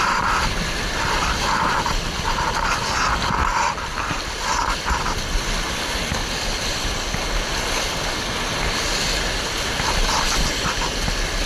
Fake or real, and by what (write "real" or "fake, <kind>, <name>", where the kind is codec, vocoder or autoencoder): real